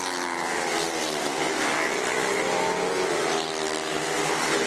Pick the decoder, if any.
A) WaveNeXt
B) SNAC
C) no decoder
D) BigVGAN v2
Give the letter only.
C